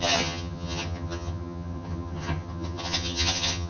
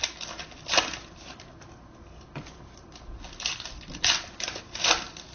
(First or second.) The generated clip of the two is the first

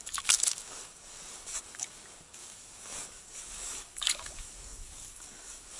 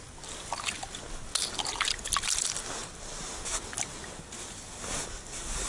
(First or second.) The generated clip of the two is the first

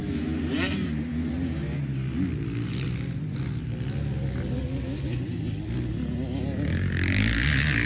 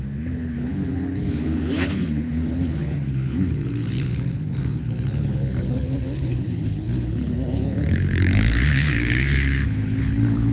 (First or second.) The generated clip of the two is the second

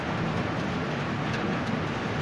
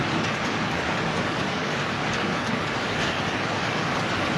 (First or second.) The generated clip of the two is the second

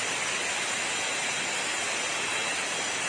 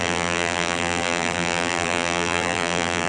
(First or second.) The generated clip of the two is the second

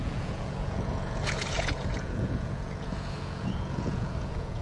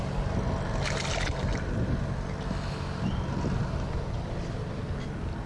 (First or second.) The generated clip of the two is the first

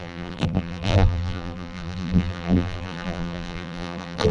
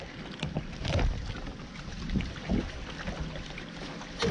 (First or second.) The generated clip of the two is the first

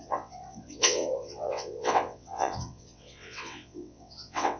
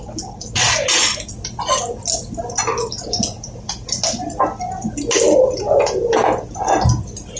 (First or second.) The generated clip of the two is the first